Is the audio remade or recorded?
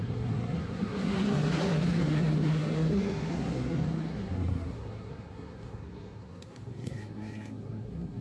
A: remade